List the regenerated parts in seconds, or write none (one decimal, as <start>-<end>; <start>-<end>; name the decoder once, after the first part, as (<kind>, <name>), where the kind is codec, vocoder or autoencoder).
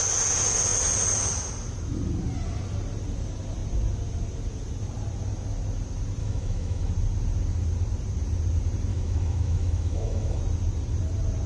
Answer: 6.2-6.9 (autoencoder, DAC-VAE); 8.9-10.4